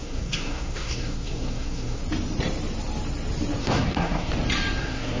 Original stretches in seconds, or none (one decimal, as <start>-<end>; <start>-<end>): 2.0-3.6; 4.3-4.8